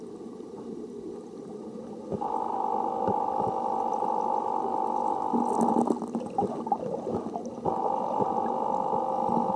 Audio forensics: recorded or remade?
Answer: recorded